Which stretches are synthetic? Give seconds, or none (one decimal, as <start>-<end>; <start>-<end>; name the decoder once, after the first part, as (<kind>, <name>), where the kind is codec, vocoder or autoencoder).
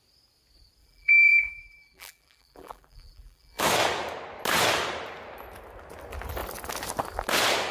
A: 0.8-3.6 (vocoder, BigVGAN v2)